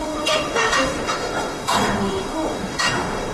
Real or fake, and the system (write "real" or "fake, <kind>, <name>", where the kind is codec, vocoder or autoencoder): fake, autoencoder, DAC-VAE